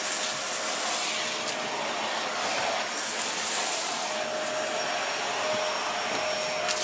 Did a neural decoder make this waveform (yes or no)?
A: no